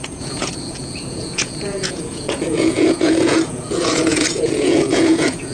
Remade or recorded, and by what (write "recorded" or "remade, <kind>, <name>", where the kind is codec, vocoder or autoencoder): remade, vocoder, Vocos